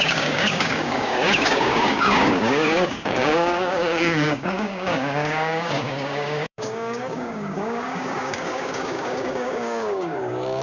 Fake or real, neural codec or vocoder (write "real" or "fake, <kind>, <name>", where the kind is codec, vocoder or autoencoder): fake, codec, DAC